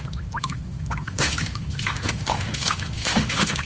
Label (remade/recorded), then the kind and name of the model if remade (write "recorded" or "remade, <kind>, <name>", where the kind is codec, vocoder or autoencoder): remade, autoencoder, DAC-VAE